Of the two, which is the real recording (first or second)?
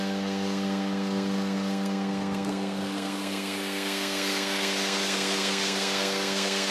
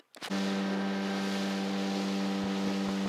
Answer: second